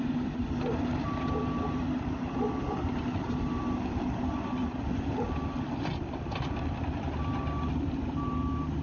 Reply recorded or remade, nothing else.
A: recorded